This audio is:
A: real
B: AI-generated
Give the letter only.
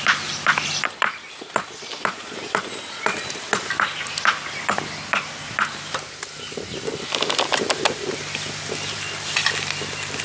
A